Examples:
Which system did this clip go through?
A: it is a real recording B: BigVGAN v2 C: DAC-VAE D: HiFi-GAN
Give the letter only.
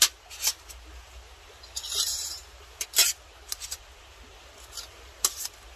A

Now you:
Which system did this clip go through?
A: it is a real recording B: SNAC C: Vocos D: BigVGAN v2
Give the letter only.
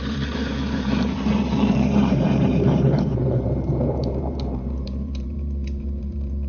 D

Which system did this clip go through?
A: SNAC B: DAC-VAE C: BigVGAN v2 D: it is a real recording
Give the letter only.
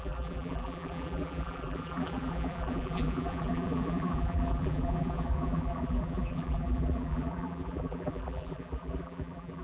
C